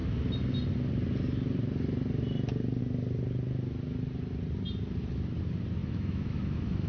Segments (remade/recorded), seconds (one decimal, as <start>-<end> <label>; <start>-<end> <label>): 0.0-5.8 recorded; 5.8-6.9 remade